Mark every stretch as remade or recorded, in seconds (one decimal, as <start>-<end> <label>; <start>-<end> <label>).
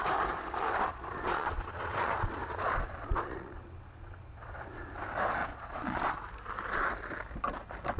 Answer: 0.0-0.9 recorded; 0.9-4.9 remade; 4.9-5.4 recorded; 5.4-6.1 remade; 6.1-8.0 recorded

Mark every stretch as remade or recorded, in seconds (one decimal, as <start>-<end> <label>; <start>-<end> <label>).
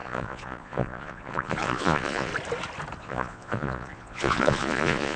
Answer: 0.0-2.3 remade; 2.3-3.0 recorded; 3.0-5.2 remade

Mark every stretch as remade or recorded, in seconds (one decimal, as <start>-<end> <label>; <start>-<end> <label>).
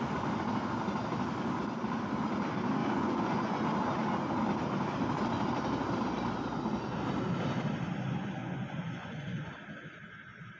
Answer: 0.0-2.8 recorded; 2.8-3.6 remade; 3.6-8.4 recorded; 8.4-9.5 remade; 9.5-10.6 recorded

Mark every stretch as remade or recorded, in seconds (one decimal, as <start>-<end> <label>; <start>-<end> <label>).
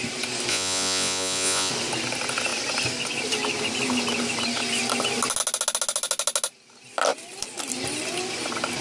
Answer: 0.0-0.5 recorded; 0.5-1.7 remade; 1.7-8.8 recorded